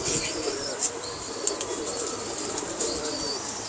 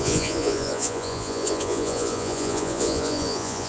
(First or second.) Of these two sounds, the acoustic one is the first